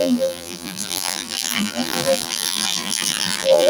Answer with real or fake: fake